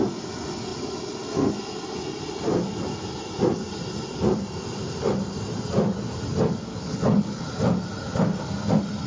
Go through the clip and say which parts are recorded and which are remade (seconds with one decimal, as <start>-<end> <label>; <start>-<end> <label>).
0.0-6.7 recorded; 6.7-7.4 remade; 7.4-9.1 recorded

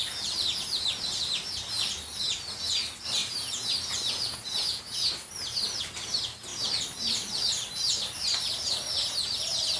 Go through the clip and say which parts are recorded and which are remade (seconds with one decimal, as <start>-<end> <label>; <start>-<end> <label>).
0.0-3.2 recorded; 3.2-3.7 remade; 3.7-4.3 recorded; 4.3-5.1 remade; 5.1-9.8 recorded

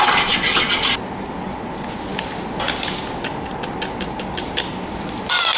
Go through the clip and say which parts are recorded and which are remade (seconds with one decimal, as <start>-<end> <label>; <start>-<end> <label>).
0.0-5.6 recorded

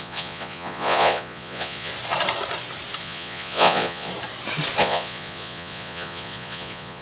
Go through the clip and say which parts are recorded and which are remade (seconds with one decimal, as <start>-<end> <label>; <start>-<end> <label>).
0.0-1.9 remade; 1.9-3.0 recorded; 3.0-4.1 remade; 4.1-4.8 recorded; 4.8-7.0 remade

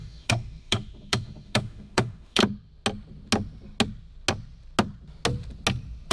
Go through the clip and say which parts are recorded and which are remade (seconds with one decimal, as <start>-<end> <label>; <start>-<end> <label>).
0.0-2.4 remade; 2.4-6.1 recorded